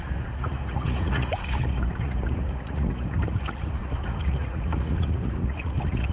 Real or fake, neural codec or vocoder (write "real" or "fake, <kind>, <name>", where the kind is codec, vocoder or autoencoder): fake, vocoder, Vocos